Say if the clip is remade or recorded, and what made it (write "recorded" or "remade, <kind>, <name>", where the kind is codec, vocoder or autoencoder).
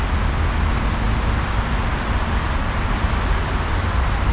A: recorded